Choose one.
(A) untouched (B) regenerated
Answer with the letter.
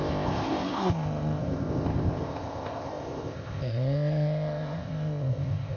B